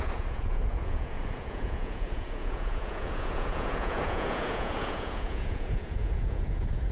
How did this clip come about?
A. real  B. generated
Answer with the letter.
B